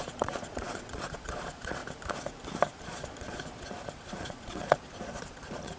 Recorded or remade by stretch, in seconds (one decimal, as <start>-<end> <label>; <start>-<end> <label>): 0.0-1.8 remade; 1.8-2.8 recorded; 2.8-5.8 remade